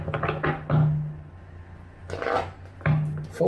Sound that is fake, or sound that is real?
real